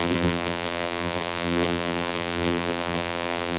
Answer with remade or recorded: remade